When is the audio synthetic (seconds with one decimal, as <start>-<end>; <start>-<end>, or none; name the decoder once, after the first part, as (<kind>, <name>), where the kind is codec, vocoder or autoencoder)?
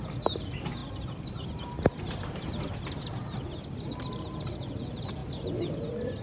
none